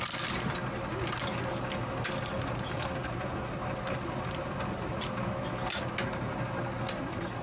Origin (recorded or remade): recorded